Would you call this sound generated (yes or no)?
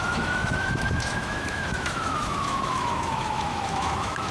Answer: yes